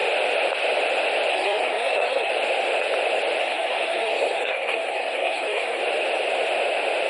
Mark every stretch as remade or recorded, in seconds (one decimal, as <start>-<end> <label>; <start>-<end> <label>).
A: 0.0-1.3 recorded; 1.3-2.3 remade; 2.3-3.4 recorded; 3.4-5.8 remade; 5.8-7.1 recorded